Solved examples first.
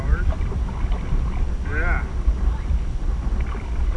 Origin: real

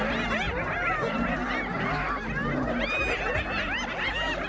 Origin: real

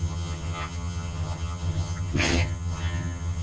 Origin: fake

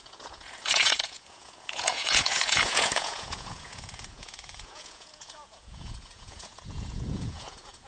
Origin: fake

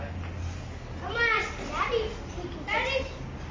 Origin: real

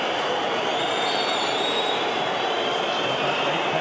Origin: fake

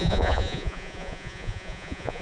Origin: fake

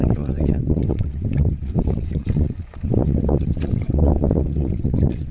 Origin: fake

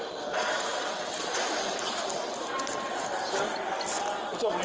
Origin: real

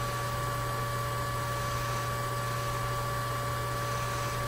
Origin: real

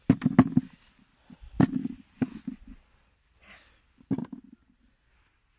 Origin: real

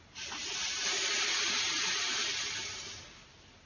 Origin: real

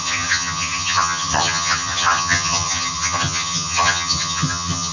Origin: fake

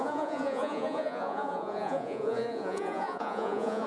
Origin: fake